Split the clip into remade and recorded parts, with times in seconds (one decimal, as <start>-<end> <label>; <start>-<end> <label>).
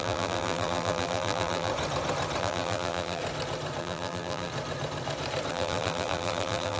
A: 0.0-1.7 remade; 1.7-2.4 recorded; 2.4-3.2 remade; 3.2-3.8 recorded; 3.8-4.5 remade; 4.5-5.5 recorded; 5.5-6.8 remade